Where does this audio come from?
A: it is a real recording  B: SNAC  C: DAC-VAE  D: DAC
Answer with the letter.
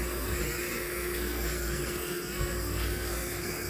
B